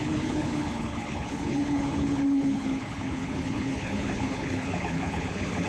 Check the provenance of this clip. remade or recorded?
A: remade